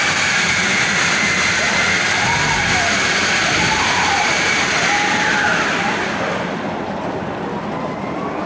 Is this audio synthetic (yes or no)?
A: yes